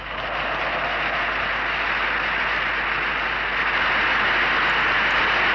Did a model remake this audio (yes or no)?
no